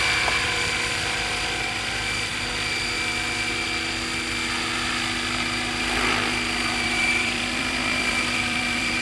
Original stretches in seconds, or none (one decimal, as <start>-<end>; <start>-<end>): 2.3-4.9